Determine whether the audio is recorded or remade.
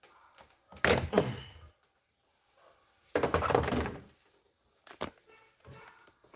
recorded